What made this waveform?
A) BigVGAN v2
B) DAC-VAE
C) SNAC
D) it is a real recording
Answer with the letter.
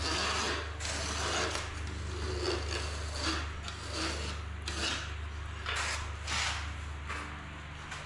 D